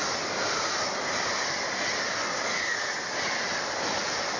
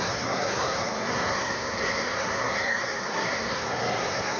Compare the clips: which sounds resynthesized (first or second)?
second